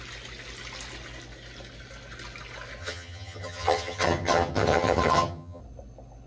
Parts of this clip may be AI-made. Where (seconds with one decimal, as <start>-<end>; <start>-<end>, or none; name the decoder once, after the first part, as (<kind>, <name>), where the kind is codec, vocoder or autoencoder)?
2.8-5.6 (vocoder, HiFi-GAN)